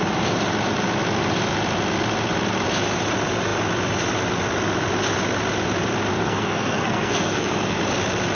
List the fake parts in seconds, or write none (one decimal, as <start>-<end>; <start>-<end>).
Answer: 6.1-7.8